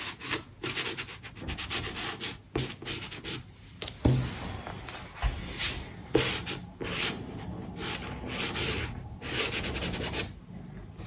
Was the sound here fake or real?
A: real